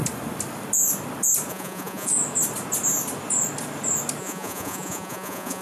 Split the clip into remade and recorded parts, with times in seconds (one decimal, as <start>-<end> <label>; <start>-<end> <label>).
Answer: 0.0-1.5 recorded; 1.5-2.1 remade; 2.1-4.2 recorded; 4.2-5.6 remade